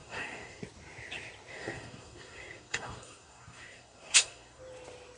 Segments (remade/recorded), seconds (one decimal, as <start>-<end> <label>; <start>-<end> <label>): 0.0-0.6 remade; 0.6-1.5 recorded; 1.5-4.6 remade; 4.6-5.2 recorded